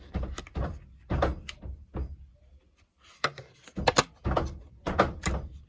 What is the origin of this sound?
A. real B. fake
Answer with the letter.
A